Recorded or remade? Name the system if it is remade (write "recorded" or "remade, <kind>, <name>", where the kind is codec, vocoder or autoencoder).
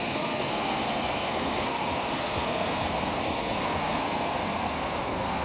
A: remade, codec, SNAC